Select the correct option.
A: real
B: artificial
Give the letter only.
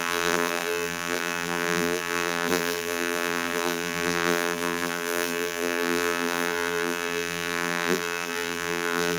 B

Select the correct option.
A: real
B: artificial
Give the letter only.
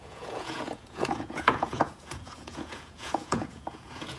B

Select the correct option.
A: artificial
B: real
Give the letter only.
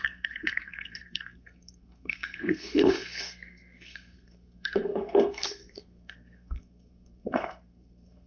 A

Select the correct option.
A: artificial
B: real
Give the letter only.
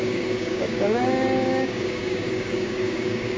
A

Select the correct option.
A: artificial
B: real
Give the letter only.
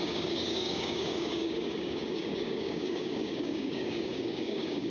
A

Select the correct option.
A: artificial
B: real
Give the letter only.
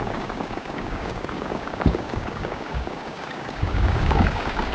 A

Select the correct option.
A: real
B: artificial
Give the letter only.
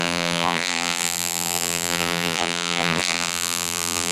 B